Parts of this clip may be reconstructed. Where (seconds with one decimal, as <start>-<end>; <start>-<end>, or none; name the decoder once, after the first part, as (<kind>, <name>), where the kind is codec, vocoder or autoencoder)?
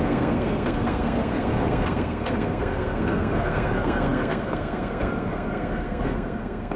0.0-6.8 (codec, SNAC)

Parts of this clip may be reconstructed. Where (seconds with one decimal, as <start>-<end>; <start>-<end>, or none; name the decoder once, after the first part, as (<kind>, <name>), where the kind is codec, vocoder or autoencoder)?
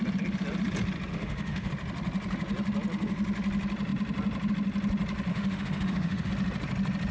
1.1-1.7 (autoencoder, DAC-VAE); 5.3-6.3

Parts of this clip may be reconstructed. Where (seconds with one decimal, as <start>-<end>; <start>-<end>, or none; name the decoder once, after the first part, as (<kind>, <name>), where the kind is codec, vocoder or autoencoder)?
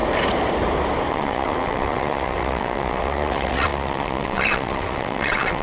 1.1-5.6 (vocoder, WaveNeXt)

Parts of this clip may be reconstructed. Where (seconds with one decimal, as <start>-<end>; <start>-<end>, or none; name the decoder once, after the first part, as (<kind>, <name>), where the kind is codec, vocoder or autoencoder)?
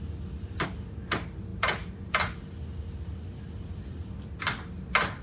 none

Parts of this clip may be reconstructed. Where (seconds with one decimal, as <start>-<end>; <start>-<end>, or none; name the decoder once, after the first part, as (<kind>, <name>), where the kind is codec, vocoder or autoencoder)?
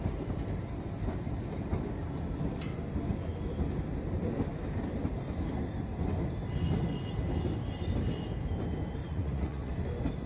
9.0-9.7 (vocoder, Vocos)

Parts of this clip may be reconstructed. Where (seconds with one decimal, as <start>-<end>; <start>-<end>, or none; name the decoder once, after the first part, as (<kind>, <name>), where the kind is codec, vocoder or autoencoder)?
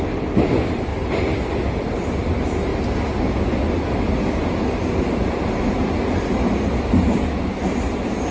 0.0-0.9 (vocoder, BigVGAN v2); 1.5-2.7; 6.8-8.3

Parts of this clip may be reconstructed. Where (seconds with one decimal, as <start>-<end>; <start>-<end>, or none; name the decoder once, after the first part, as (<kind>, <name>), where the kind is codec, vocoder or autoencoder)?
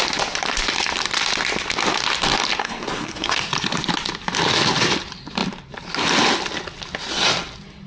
2.6-3.4 (codec, SNAC)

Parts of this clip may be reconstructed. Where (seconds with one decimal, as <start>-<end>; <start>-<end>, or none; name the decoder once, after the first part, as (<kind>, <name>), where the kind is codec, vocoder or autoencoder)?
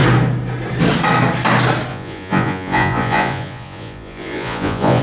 1.9-5.0 (vocoder, Vocos)